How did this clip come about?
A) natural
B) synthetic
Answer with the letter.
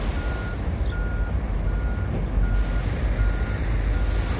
A